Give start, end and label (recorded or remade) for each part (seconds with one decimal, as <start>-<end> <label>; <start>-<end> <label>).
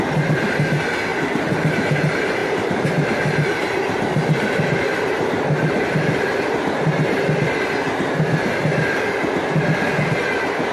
0.0-1.1 recorded; 1.1-1.9 remade; 1.9-2.4 recorded; 2.4-7.2 remade; 7.2-10.7 recorded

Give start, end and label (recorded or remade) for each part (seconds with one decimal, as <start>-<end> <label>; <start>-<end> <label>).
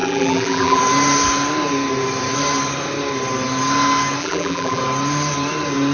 0.0-0.8 remade; 0.8-4.2 recorded; 4.2-4.8 remade; 4.8-5.9 recorded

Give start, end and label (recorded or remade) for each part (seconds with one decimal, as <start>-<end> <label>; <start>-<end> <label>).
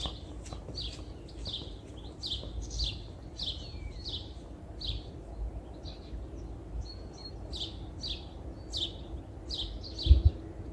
0.0-3.7 recorded; 3.7-5.1 remade; 5.1-10.7 recorded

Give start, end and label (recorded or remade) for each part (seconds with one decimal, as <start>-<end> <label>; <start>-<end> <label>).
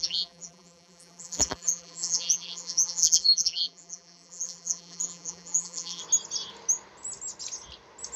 0.0-6.0 remade; 6.0-8.2 recorded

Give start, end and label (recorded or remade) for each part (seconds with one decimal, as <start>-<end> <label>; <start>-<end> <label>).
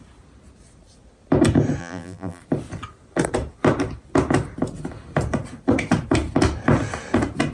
0.0-1.8 recorded; 1.8-2.4 remade; 2.4-7.5 recorded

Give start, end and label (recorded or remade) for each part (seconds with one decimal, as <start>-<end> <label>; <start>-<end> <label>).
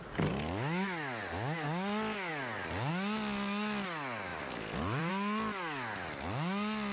0.0-4.3 recorded; 4.3-5.1 remade; 5.1-6.9 recorded